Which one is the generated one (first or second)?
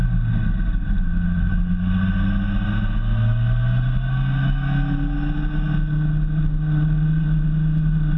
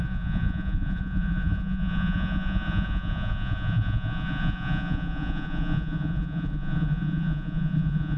second